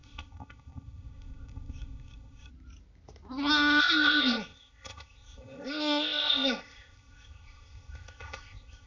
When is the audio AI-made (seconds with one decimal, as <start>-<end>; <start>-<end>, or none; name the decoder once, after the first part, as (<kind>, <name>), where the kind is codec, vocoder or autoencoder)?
0.0-2.5 (codec, ZipCodec); 3.8-8.9